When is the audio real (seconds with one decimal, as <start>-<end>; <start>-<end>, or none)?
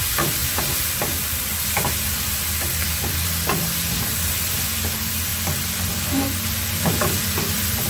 0.0-0.4; 3.6-7.9